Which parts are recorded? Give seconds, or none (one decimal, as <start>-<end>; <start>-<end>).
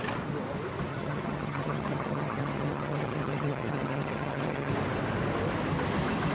0.0-0.9; 4.7-6.3